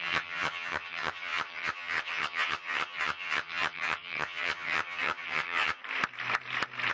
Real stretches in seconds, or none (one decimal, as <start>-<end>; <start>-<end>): 5.8-6.9